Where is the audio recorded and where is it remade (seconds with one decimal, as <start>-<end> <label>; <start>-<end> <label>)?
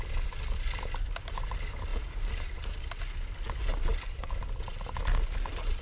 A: 0.0-5.8 recorded